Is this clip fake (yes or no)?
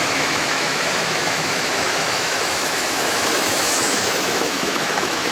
yes